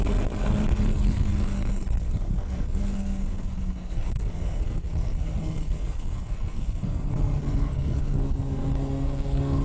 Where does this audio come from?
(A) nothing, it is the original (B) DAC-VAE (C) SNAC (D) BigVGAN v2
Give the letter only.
C